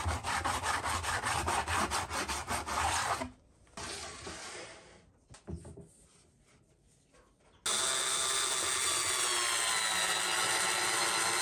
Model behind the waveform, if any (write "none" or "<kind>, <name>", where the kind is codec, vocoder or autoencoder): none